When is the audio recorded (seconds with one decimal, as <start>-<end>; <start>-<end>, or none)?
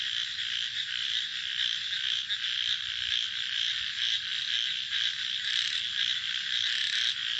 0.0-7.4